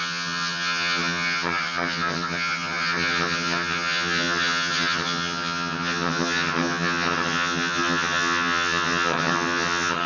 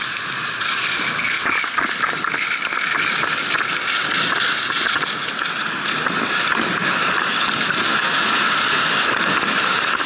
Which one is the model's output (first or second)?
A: first